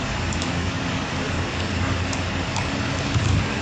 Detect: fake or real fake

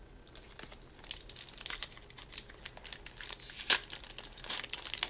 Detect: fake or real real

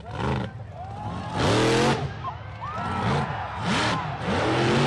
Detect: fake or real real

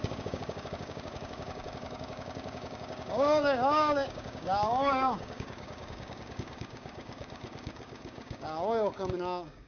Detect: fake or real fake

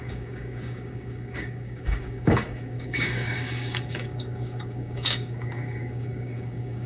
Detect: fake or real fake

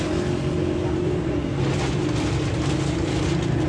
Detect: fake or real real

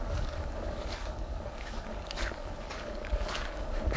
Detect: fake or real fake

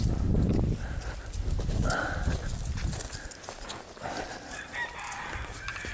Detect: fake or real real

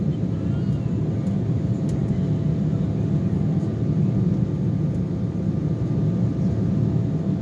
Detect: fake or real real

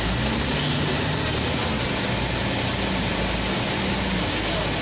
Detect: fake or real real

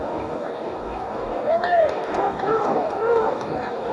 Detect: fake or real fake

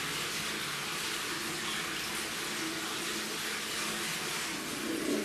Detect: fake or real real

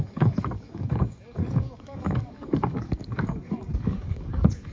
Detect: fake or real fake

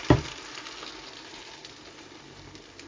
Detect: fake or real real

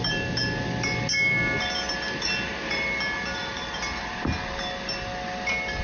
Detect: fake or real real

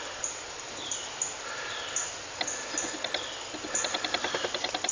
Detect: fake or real real